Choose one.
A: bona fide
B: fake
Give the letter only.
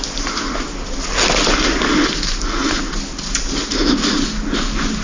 A